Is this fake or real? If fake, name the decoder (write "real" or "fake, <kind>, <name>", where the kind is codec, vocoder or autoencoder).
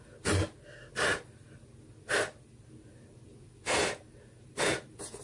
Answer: real